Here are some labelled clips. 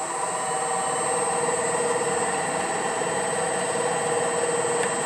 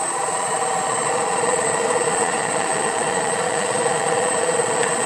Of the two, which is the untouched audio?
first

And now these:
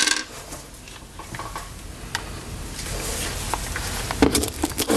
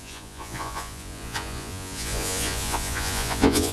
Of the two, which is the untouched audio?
first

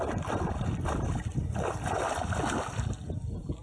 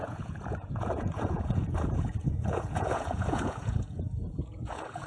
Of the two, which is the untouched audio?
first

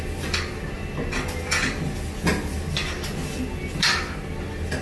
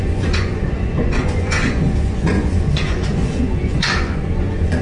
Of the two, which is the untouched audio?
first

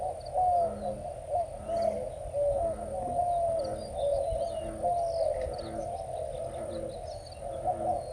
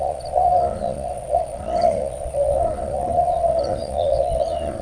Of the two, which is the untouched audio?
first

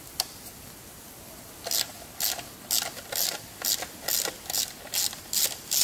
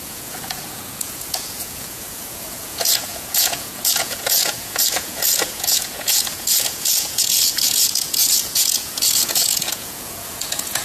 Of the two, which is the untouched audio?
first